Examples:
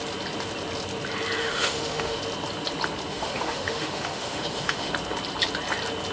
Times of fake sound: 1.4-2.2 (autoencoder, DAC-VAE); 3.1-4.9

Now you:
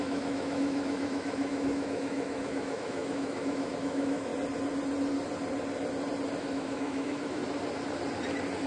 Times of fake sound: 0.0-4.3 (autoencoder, DAC-VAE); 6.4-7.4

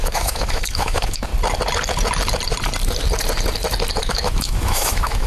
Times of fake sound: 0.0-1.3 (autoencoder, DAC-VAE); 4.0-5.3

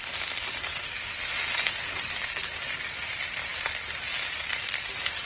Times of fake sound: none

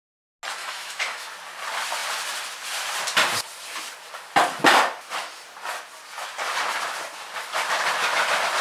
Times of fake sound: 0.6-1.3 (autoencoder, DAC-VAE)

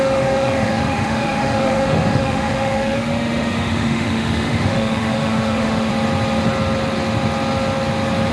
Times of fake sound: 0.0-5.9 (autoencoder, DAC-VAE)